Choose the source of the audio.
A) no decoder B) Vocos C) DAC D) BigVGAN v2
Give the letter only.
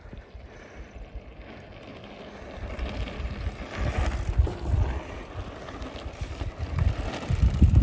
D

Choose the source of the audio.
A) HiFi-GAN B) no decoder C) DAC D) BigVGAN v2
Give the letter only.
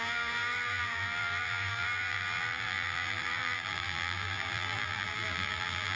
D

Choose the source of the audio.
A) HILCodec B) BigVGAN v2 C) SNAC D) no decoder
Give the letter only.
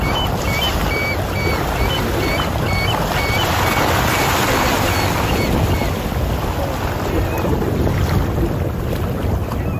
D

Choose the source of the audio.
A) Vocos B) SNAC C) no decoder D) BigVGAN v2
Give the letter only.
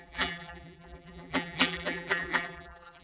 D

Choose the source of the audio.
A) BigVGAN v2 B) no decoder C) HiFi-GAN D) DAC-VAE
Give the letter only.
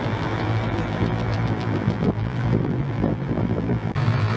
A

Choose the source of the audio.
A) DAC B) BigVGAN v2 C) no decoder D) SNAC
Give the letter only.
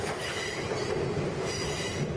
B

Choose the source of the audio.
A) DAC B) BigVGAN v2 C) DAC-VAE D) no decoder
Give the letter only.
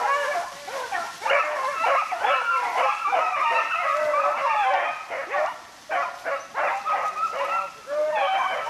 D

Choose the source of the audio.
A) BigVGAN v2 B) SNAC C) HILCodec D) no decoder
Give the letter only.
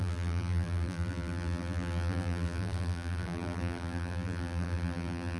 A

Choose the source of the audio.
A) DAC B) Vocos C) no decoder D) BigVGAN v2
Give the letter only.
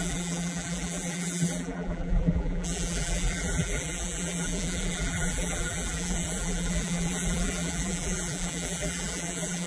D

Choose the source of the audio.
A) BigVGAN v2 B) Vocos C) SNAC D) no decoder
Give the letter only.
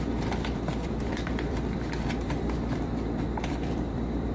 A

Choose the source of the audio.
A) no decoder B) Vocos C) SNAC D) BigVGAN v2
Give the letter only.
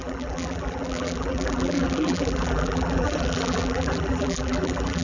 D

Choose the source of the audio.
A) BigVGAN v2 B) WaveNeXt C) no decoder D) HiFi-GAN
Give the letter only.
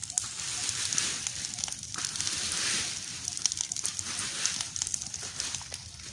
A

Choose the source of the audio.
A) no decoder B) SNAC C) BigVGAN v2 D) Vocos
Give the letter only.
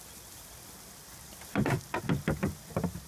A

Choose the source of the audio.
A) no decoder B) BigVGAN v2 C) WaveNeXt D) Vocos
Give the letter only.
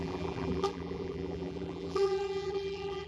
B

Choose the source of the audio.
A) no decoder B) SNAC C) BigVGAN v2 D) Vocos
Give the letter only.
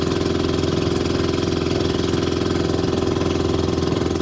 A